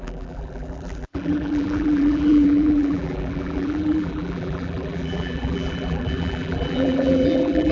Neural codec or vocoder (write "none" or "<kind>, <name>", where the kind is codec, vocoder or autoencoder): vocoder, BigVGAN v2